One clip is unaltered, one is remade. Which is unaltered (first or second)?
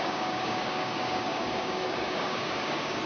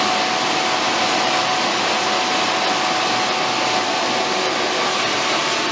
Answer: second